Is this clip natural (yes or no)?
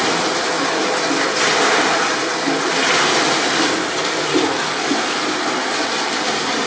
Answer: yes